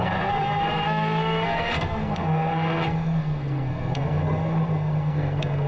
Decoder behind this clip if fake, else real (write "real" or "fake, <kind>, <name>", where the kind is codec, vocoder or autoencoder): fake, codec, SNAC